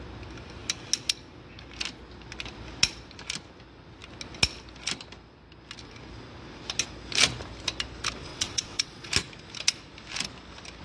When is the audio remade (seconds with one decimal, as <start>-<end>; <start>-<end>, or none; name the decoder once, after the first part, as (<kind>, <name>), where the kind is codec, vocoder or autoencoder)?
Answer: 8.3-9.1 (vocoder, WaveNeXt)

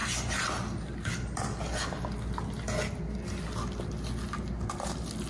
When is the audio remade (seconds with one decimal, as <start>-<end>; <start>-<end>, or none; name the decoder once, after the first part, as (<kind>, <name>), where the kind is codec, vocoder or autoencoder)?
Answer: none

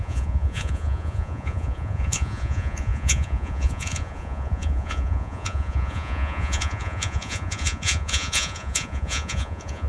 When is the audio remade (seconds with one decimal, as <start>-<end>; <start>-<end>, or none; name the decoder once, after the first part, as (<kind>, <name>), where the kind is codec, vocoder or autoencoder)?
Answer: 0.0-9.9 (vocoder, Vocos)

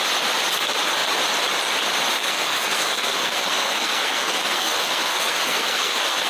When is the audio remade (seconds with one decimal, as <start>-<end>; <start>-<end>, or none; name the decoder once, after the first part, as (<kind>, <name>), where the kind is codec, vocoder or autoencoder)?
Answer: 2.2-6.3 (codec, SNAC)

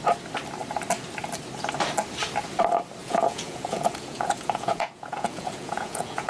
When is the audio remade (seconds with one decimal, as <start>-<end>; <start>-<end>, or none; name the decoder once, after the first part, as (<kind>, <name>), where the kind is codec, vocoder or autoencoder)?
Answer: 3.0-6.3 (vocoder, Vocos)